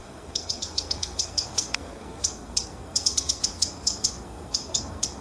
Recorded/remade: remade